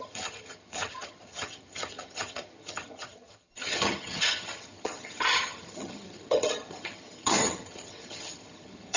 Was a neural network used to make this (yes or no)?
yes